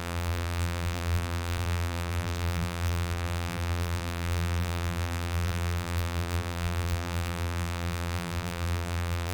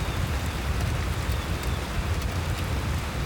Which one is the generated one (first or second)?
first